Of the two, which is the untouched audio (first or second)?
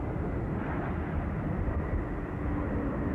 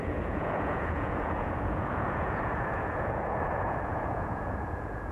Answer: first